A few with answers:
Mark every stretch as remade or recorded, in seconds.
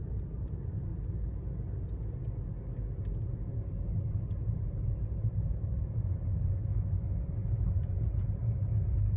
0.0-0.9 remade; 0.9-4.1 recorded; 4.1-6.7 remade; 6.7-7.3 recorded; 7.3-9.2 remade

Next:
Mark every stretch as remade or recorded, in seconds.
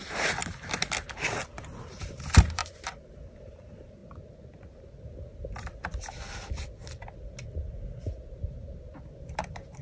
0.0-0.4 remade; 0.4-1.8 recorded; 1.8-4.0 remade; 4.0-9.0 recorded; 9.0-9.8 remade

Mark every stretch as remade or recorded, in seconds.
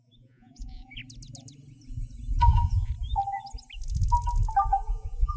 0.0-1.0 remade; 1.0-2.4 recorded; 2.4-2.9 remade; 2.9-4.7 recorded; 4.7-5.4 remade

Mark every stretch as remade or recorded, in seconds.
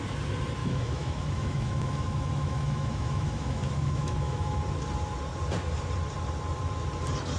0.0-0.6 recorded; 0.6-4.6 remade; 4.6-7.4 recorded